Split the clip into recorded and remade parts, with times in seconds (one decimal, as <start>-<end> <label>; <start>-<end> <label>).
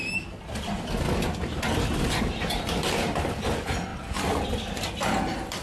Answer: 0.0-5.6 recorded